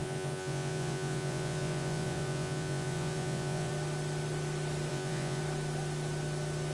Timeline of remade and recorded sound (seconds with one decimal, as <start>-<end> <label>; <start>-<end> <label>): 0.0-3.7 remade; 3.7-4.9 recorded; 4.9-5.4 remade; 5.4-6.7 recorded